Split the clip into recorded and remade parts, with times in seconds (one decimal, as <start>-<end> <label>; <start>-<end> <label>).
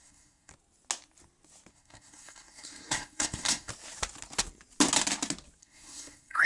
0.0-0.5 remade; 0.5-1.7 recorded; 1.7-3.7 remade; 3.7-5.6 recorded; 5.6-6.5 remade